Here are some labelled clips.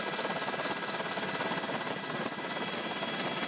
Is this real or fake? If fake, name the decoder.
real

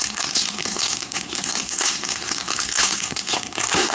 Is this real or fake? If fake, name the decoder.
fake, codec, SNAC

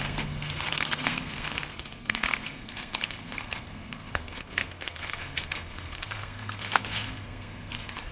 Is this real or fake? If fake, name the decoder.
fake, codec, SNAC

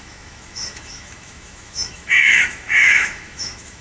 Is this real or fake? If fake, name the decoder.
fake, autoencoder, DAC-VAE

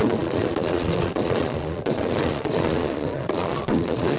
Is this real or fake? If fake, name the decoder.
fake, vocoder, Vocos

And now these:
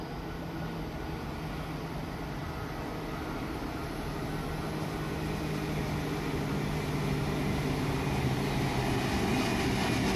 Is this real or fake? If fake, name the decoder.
real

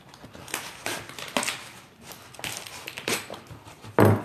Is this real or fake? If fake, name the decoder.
real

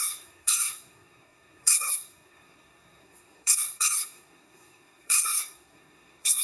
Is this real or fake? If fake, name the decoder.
fake, codec, SNAC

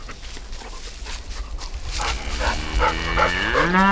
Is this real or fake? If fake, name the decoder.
real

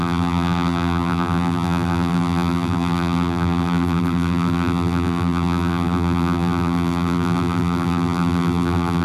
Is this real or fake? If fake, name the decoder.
fake, vocoder, BigVGAN v2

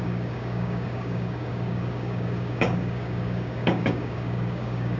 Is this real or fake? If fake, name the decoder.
fake, codec, DAC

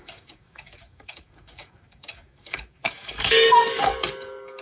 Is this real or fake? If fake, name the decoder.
fake, codec, DAC